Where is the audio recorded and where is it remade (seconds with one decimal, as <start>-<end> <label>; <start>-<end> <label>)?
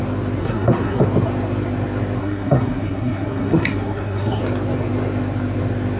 0.0-0.4 recorded; 0.4-1.0 remade; 1.0-2.2 recorded; 2.2-4.4 remade; 4.4-6.0 recorded